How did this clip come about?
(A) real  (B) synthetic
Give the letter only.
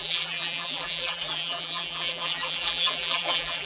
B